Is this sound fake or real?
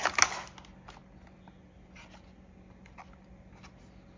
real